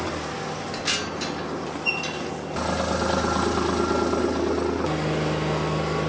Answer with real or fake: real